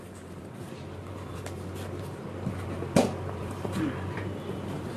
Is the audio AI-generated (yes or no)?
no